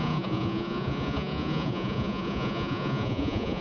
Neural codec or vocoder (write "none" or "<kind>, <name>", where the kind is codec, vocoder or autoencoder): vocoder, Vocos